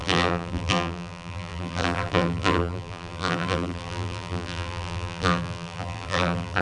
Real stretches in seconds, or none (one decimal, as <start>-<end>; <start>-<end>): none